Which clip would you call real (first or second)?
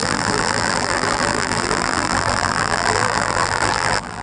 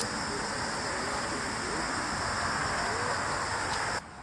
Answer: second